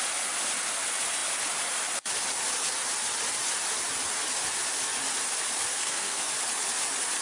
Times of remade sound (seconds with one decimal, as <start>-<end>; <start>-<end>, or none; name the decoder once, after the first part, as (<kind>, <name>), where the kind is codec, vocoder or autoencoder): 5.7-6.3 (codec, SNAC)